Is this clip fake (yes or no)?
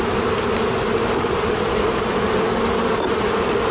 no